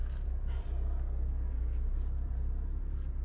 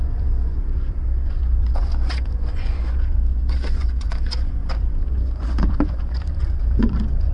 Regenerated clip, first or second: second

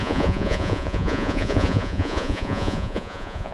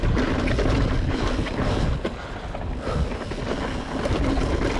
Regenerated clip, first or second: first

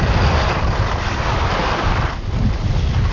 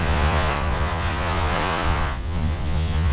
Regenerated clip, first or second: second